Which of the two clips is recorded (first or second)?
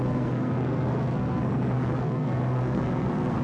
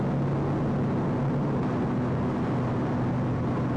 second